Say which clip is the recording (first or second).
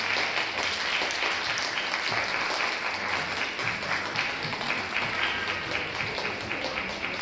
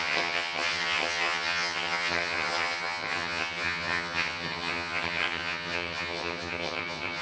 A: first